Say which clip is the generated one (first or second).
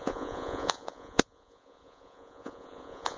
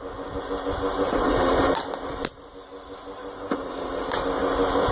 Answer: first